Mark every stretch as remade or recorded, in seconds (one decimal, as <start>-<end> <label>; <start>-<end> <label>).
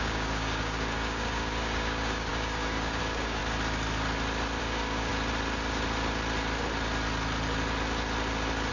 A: 0.0-3.4 remade; 3.4-4.6 recorded; 4.6-5.1 remade; 5.1-8.7 recorded